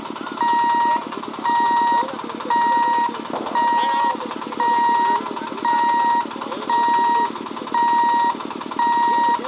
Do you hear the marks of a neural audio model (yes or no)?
no